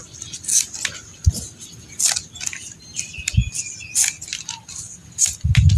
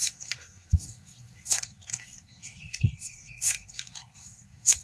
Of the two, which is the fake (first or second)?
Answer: second